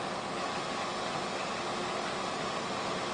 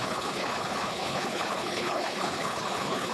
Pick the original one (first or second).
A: first